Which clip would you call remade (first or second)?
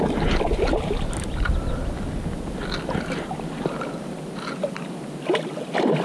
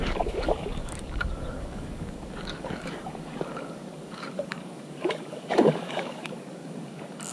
second